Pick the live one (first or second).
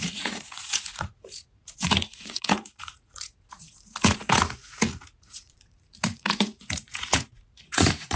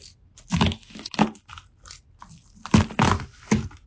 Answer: second